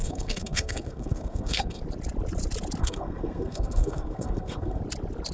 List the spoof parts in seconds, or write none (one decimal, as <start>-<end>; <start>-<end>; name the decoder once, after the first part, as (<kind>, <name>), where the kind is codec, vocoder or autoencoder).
0.0-1.8 (codec, SNAC); 2.8-4.8